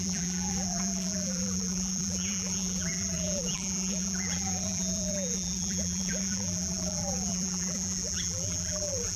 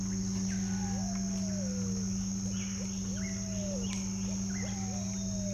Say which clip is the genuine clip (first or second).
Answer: second